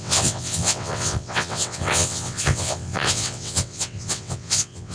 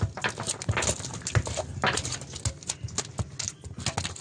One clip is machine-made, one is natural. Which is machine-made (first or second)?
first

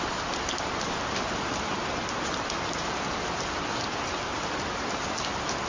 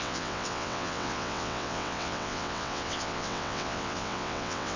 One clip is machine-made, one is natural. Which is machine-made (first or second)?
second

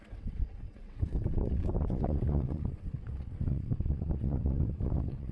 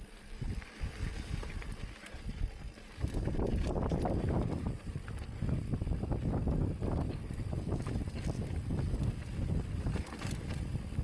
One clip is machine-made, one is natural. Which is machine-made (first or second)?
first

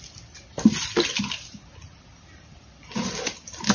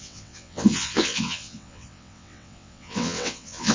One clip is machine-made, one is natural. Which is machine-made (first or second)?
second